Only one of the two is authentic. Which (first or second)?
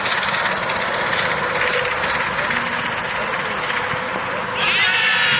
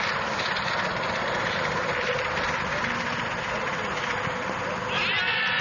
first